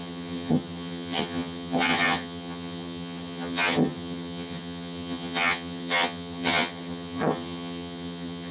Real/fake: fake